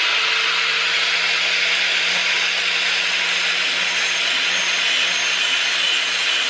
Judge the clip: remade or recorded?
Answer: recorded